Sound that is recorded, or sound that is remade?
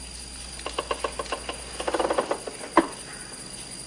recorded